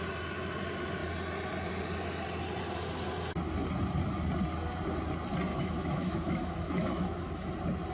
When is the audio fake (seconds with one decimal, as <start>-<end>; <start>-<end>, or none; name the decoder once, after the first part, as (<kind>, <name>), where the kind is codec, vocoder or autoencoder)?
5.5-7.5 (autoencoder, DAC-VAE)